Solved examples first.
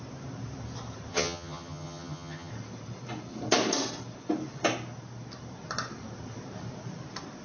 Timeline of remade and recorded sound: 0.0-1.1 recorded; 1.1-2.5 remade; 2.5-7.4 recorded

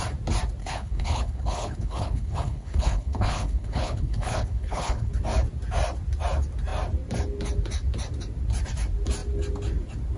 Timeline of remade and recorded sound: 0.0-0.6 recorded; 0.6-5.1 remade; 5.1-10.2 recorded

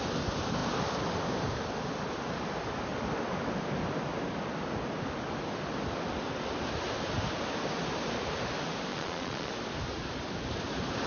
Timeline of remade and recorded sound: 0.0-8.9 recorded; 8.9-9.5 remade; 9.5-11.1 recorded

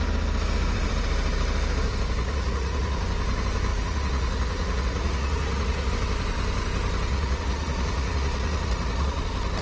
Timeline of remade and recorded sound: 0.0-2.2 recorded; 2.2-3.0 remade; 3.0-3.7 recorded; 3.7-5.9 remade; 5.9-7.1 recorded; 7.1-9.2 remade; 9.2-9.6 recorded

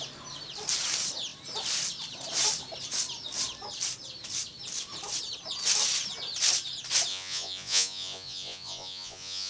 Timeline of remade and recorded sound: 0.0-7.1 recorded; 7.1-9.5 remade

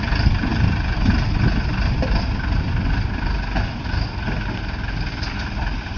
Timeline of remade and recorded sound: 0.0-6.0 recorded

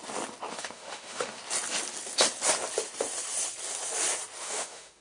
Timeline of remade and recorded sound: 0.0-0.5 recorded; 0.5-1.4 remade; 1.4-4.4 recorded; 4.4-5.0 remade